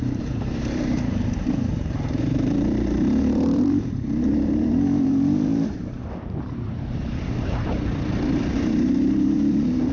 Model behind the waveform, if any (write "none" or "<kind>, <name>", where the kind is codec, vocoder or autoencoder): vocoder, BigVGAN v2